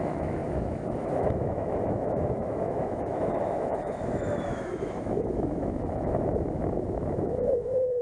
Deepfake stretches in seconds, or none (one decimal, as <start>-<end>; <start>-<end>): 0.0-8.0